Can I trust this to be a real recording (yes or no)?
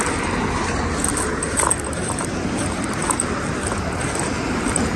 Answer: yes